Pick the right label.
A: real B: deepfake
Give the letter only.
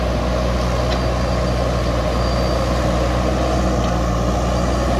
A